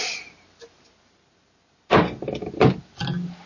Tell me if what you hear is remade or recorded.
recorded